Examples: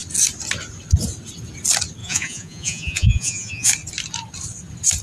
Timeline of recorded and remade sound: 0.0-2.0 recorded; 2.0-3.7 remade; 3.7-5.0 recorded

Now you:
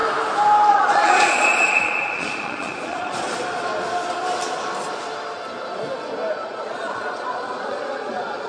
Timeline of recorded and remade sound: 0.0-0.7 recorded; 0.7-3.7 remade; 3.7-6.3 recorded; 6.3-8.5 remade

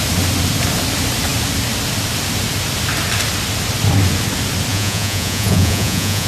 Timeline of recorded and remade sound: 0.0-4.7 recorded; 4.7-6.3 remade

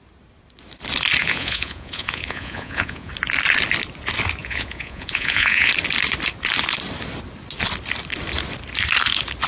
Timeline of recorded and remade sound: 0.0-1.2 recorded; 1.2-3.1 remade; 3.1-4.4 recorded; 4.4-5.7 remade; 5.7-9.5 recorded